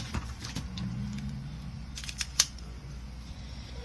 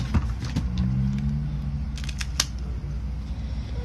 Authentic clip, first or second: second